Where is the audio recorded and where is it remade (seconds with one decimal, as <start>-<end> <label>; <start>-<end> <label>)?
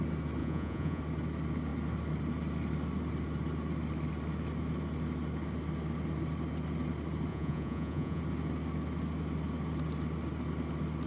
0.0-0.4 recorded; 0.4-1.0 remade; 1.0-7.3 recorded; 7.3-8.2 remade; 8.2-11.1 recorded